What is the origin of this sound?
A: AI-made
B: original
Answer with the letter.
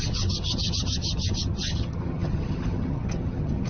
A